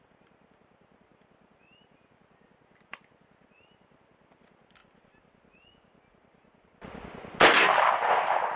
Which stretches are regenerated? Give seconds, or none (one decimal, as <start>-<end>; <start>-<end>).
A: none